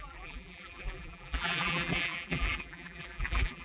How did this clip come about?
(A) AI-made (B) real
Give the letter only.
A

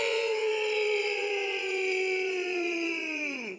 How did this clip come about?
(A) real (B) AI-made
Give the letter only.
B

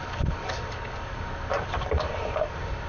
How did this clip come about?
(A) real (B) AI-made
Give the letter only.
B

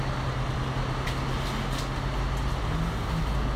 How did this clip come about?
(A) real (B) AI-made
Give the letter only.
A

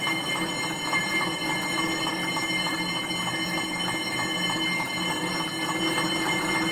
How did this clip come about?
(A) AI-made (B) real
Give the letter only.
B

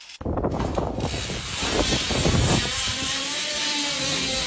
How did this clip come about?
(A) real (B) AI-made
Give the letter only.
A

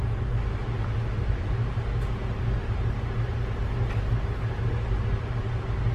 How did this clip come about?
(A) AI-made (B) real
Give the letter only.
B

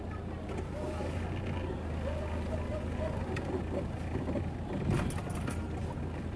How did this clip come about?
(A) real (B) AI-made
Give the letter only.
A